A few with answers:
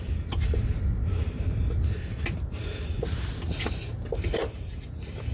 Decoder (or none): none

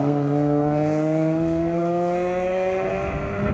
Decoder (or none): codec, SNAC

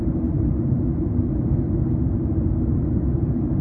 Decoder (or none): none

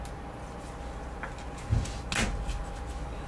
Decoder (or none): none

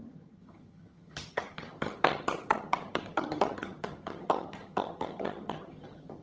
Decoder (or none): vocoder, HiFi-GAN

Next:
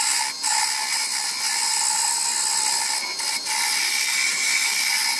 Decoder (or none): none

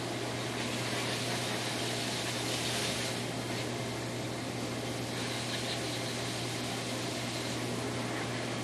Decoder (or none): none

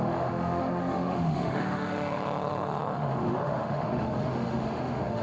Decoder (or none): autoencoder, DAC-VAE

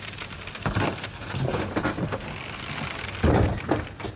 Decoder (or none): none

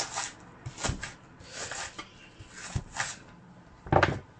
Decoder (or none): none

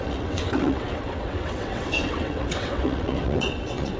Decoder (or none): vocoder, WaveNeXt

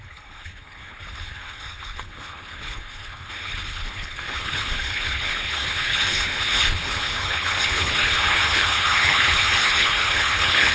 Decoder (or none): codec, HILCodec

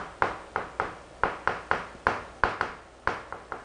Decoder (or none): none